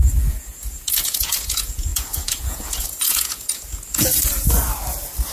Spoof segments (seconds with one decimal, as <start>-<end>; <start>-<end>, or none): 0.0-4.3